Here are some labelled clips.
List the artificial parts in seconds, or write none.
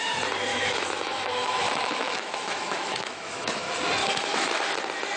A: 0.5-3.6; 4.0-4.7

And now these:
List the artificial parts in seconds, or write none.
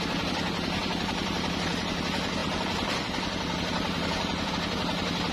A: 0.8-1.7; 2.4-4.5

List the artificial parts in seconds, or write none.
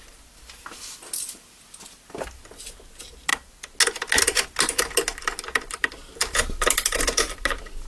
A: none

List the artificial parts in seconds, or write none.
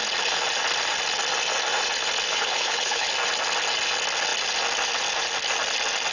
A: 2.3-3.1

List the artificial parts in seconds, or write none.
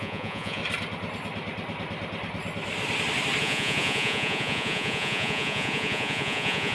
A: 0.0-0.6; 3.4-6.7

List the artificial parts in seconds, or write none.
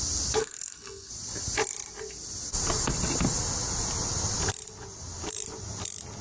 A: 0.4-1.1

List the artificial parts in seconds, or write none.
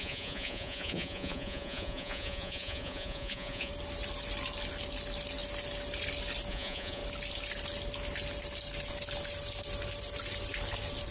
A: 0.0-3.7; 6.5-7.0